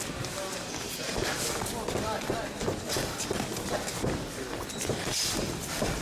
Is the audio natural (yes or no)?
yes